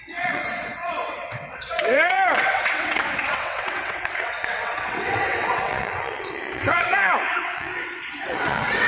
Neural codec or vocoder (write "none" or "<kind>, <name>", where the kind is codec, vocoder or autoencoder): vocoder, WaveNeXt